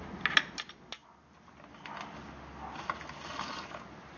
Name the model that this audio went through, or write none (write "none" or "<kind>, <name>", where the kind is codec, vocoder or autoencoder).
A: none